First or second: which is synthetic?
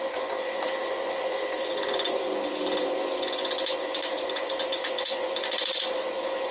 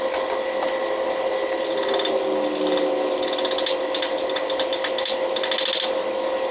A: first